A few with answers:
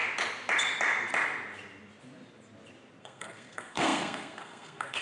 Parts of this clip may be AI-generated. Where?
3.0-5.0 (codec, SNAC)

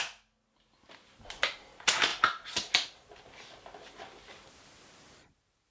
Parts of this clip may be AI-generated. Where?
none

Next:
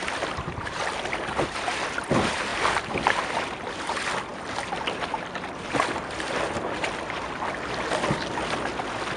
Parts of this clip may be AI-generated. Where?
0.0-0.8 (vocoder, BigVGAN v2); 2.0-9.2

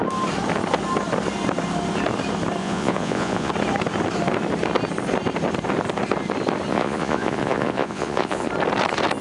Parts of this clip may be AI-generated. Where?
2.6-3.5 (vocoder, Vocos); 6.7-8.5

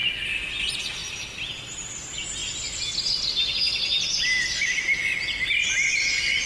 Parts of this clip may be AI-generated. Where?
1.0-1.5 (vocoder, BigVGAN v2)